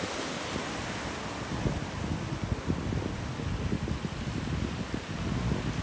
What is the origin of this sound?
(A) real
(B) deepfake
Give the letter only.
A